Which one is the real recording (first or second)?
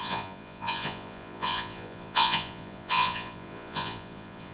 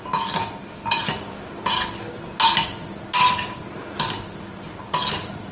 second